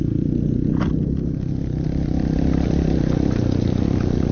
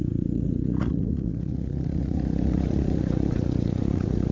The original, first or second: first